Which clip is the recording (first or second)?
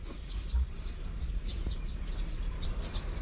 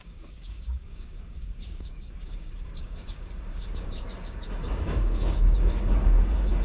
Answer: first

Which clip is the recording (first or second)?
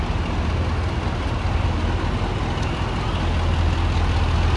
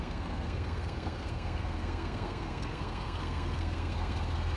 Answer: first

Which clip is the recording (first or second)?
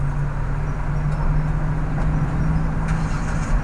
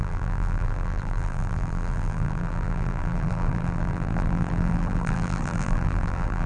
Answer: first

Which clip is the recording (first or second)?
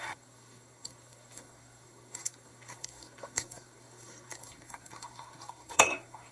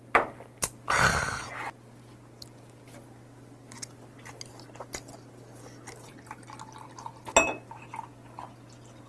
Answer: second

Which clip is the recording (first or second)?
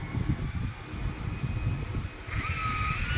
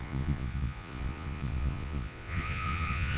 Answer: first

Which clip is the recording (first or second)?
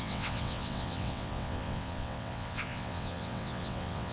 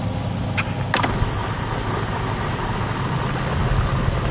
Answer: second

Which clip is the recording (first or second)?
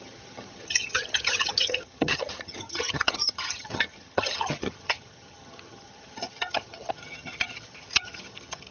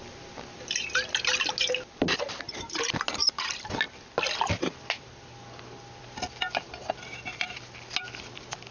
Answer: second